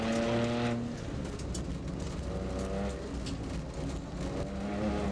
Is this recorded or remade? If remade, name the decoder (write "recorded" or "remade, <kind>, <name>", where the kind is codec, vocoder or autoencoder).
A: recorded